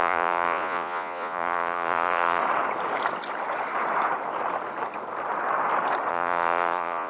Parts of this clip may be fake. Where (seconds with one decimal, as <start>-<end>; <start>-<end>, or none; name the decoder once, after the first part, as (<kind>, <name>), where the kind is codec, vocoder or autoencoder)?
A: 0.0-2.4 (vocoder, Vocos); 6.1-7.1